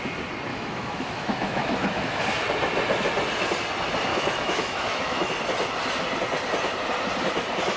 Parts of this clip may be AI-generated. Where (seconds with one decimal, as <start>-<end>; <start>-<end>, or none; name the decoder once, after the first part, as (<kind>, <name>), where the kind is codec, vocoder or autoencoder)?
0.5-2.2 (autoencoder, DAC-VAE); 4.1-5.3